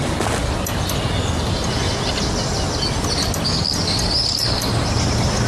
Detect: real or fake real